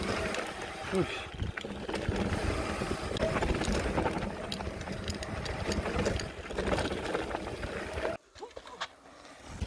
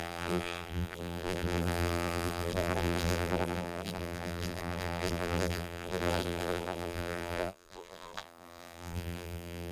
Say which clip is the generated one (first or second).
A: second